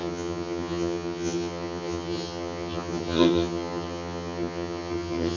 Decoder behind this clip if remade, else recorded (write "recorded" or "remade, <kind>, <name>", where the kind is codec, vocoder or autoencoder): remade, vocoder, HiFi-GAN